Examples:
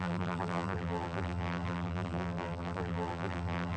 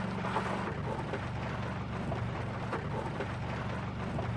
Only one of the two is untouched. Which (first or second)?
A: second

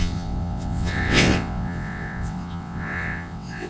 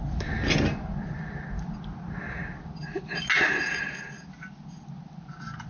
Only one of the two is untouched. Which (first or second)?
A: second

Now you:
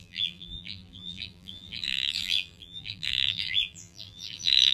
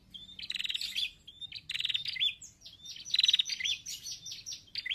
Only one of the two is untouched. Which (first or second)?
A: second